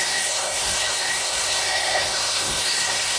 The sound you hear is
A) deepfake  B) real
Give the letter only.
A